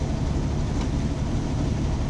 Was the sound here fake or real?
real